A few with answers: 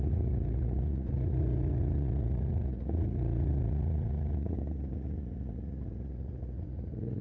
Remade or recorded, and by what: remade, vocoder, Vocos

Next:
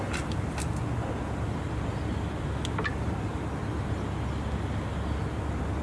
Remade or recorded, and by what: recorded